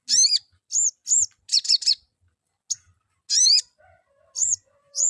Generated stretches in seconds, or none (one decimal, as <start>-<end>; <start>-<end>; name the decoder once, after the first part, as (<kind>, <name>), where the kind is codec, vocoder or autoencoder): 4.4-5.1 (vocoder, Vocos)